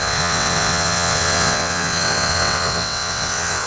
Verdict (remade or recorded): remade